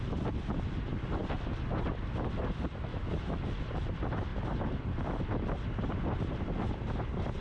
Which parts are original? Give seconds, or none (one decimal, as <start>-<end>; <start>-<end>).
0.0-2.9; 3.4-7.4